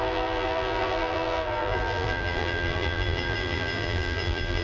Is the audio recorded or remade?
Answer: remade